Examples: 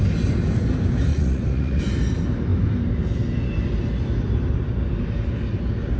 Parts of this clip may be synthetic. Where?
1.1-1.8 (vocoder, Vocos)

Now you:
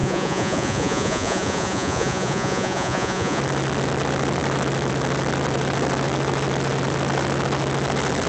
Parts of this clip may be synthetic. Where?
0.0-3.4 (vocoder, Vocos)

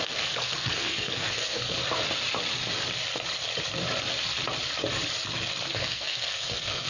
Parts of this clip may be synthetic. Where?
0.0-1.8 (codec, SNAC); 5.7-6.9